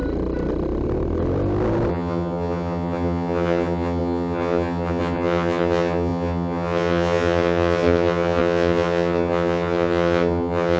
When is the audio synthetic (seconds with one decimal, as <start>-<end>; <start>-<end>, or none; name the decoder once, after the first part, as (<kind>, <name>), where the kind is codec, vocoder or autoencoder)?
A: 1.9-10.8 (vocoder, HiFi-GAN)